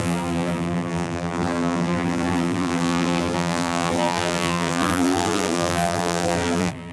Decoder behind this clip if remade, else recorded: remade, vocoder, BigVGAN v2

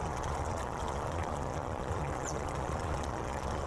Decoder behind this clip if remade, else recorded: remade, vocoder, Vocos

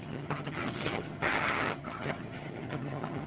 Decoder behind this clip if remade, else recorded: remade, vocoder, HiFi-GAN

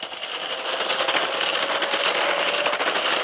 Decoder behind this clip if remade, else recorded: recorded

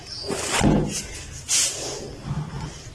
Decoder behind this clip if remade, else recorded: recorded